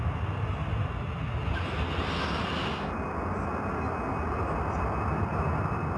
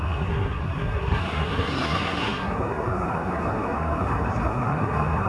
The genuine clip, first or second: first